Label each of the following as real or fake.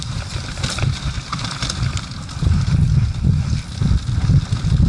real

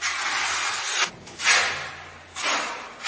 real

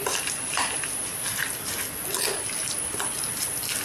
real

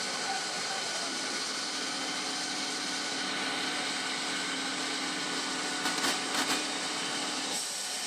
real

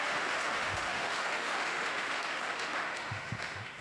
fake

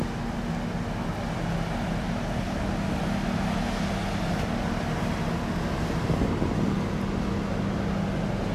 real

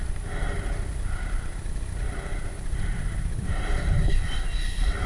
real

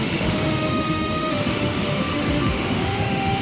fake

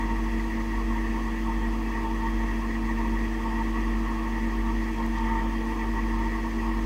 real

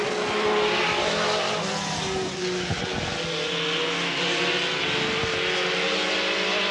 real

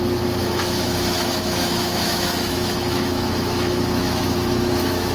fake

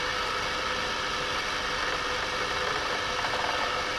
real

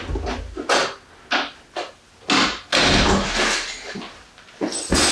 real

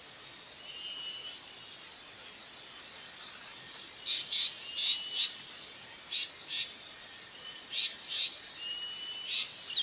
real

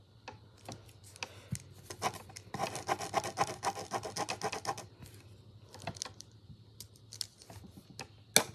real